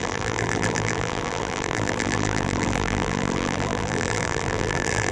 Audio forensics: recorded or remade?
remade